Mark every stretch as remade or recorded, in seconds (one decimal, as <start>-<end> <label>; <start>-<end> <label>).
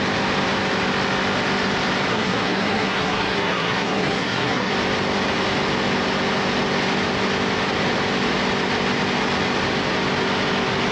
0.0-2.1 recorded; 2.1-4.7 remade; 4.7-10.9 recorded